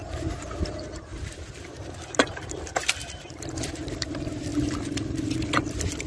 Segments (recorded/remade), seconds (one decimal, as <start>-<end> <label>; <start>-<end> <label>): 0.0-1.1 recorded; 1.1-3.8 remade; 3.8-4.5 recorded; 4.5-5.5 remade; 5.5-6.1 recorded